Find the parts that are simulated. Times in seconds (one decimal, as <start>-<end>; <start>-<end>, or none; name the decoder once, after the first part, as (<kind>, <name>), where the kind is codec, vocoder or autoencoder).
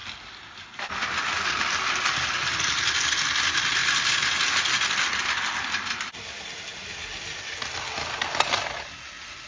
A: none